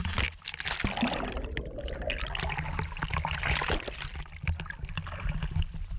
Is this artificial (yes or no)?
no